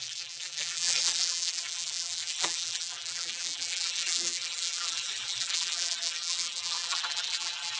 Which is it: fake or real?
fake